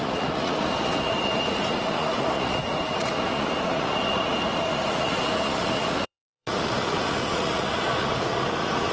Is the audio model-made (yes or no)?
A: yes